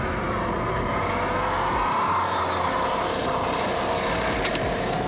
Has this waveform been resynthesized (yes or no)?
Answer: no